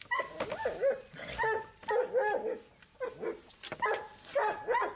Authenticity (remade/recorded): recorded